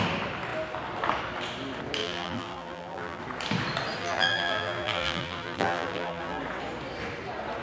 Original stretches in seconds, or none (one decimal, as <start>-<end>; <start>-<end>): 0.0-2.0; 3.2-4.0; 6.4-7.6